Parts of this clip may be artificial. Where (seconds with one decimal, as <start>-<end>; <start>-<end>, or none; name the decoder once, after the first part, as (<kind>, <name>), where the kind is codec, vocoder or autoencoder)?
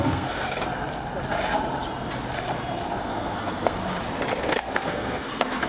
0.0-0.7 (codec, SNAC); 3.0-3.8; 4.4-5.7